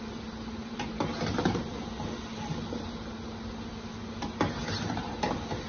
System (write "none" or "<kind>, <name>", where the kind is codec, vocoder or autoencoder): none